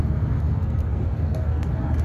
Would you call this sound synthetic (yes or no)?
yes